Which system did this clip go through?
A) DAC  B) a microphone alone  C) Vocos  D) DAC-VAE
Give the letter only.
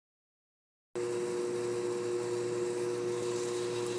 B